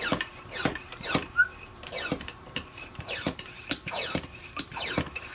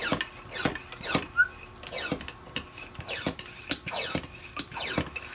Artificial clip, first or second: first